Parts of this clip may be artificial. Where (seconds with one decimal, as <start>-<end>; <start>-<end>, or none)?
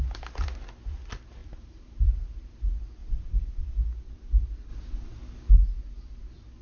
1.4-2.5; 3.0-3.6